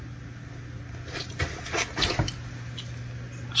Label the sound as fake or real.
real